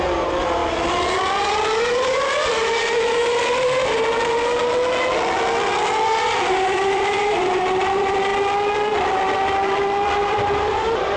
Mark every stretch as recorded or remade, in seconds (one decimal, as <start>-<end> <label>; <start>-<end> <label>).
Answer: 0.0-0.6 remade; 0.6-1.8 recorded; 1.8-2.6 remade; 2.6-6.5 recorded; 6.5-8.3 remade; 8.3-8.9 recorded; 8.9-11.2 remade